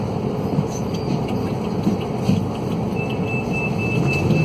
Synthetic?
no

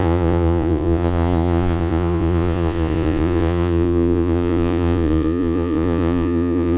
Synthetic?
yes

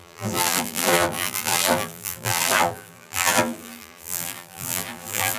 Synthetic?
yes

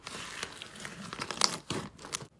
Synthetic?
no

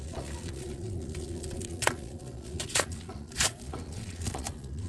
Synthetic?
yes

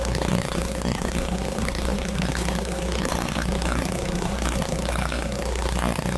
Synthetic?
yes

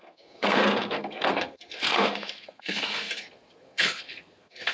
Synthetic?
yes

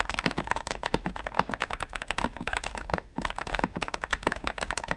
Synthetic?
yes